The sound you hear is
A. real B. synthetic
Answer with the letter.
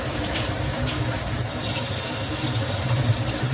B